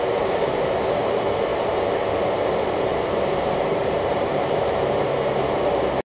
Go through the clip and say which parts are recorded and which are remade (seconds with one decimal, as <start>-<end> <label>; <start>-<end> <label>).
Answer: 0.0-2.9 recorded; 2.9-4.8 remade; 4.8-6.1 recorded